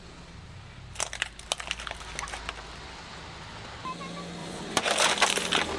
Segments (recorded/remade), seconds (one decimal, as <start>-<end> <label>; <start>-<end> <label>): 0.0-4.4 recorded; 4.4-4.9 remade; 4.9-5.8 recorded